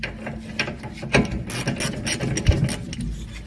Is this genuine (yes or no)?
yes